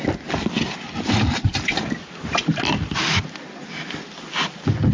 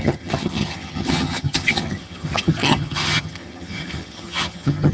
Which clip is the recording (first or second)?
first